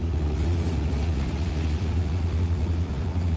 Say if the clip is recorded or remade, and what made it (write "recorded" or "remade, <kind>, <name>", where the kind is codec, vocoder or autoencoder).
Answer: remade, vocoder, Vocos